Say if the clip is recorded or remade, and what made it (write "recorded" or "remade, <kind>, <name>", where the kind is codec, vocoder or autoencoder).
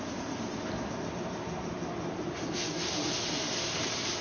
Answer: recorded